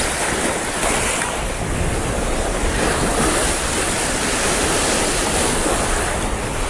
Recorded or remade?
recorded